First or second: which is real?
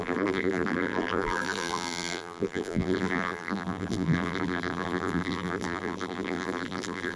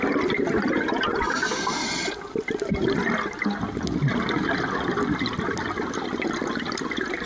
second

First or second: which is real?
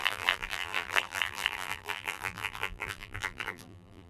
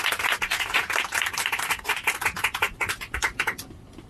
second